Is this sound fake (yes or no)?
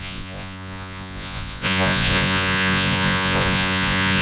yes